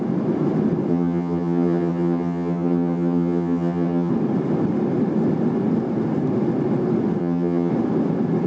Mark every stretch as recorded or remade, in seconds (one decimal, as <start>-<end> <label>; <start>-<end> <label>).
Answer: 0.0-0.9 recorded; 0.9-4.1 remade; 4.1-7.2 recorded; 7.2-7.7 remade; 7.7-8.5 recorded

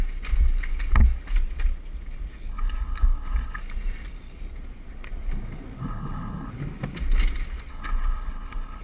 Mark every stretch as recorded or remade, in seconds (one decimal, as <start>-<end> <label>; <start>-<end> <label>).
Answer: 0.0-2.5 recorded; 2.5-3.6 remade; 3.6-5.8 recorded; 5.8-6.5 remade; 6.5-7.7 recorded; 7.7-8.8 remade

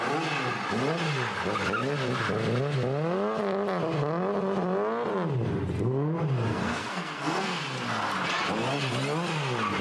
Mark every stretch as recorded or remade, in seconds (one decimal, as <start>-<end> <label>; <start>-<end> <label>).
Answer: 0.0-6.5 recorded; 6.5-7.6 remade; 7.6-9.8 recorded

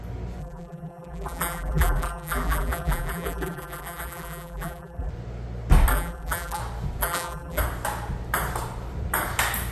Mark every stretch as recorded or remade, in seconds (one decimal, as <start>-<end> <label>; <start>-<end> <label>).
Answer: 0.0-0.4 recorded; 0.4-5.1 remade; 5.1-5.9 recorded; 5.9-6.6 remade; 6.6-7.0 recorded; 7.0-7.6 remade; 7.6-9.7 recorded

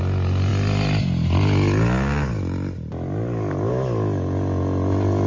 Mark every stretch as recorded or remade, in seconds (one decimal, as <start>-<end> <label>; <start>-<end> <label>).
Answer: 0.0-5.3 recorded

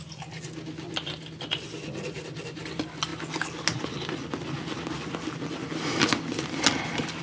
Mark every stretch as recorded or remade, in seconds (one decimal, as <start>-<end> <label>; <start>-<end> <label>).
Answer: 0.0-7.2 recorded